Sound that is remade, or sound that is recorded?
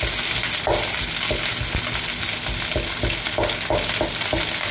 recorded